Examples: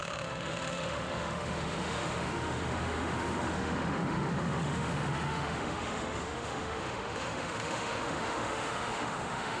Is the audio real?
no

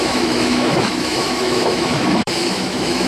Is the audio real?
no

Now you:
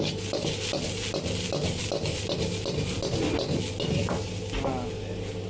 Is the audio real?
yes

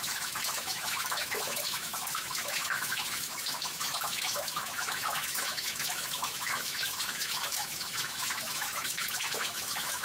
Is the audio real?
no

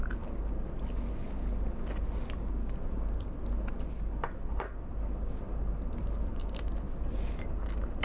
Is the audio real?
yes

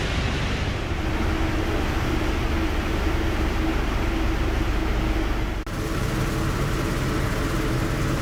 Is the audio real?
yes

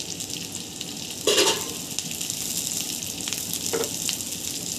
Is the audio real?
yes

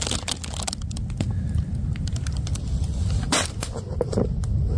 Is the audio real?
yes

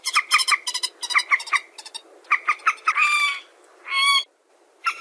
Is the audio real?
yes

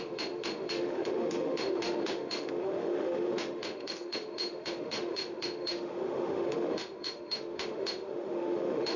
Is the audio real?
no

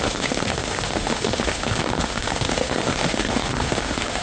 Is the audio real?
no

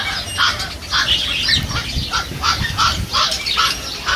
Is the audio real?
yes